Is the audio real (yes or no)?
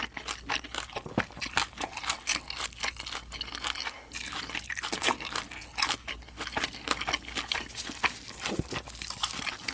yes